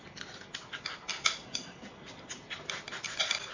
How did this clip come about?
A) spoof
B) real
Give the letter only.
B